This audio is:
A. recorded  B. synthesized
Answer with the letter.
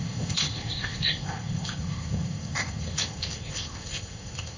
B